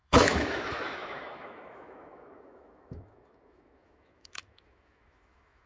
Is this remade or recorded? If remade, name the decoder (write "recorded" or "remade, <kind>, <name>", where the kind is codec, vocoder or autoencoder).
remade, autoencoder, DAC-VAE